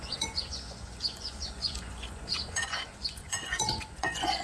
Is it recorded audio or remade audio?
remade